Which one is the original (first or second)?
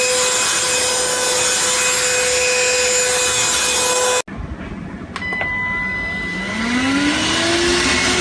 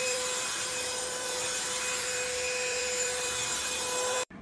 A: first